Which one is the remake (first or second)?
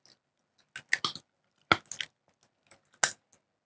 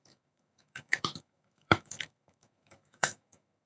second